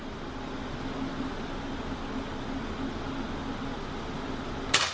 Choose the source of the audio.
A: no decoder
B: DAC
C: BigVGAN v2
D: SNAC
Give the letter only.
A